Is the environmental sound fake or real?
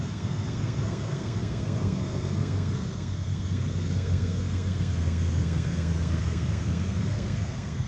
fake